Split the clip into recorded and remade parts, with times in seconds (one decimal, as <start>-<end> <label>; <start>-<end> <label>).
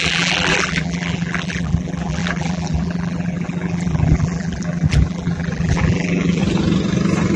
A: 0.0-6.4 remade; 6.4-7.4 recorded